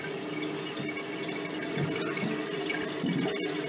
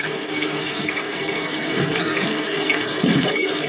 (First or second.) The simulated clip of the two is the second